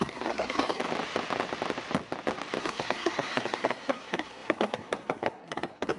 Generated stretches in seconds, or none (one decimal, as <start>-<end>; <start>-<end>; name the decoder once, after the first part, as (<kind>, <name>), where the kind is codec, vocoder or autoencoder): 0.0-0.8 (codec, SNAC); 2.6-6.0